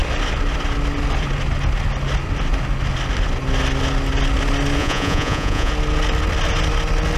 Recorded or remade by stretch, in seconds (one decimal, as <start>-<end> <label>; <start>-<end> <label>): 0.0-4.8 recorded; 4.8-5.7 remade; 5.7-7.2 recorded